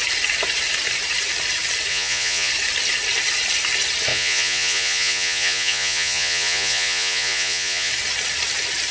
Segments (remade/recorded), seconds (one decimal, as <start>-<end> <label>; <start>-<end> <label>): 0.0-1.9 recorded; 1.9-2.5 remade; 2.5-4.1 recorded; 4.1-7.9 remade; 7.9-8.9 recorded